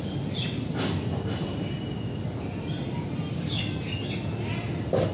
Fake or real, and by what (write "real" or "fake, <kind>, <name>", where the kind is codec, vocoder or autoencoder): real